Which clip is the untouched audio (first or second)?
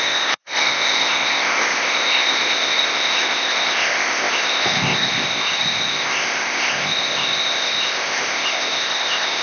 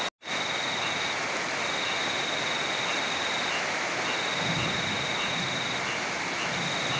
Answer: second